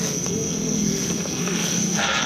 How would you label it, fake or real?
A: fake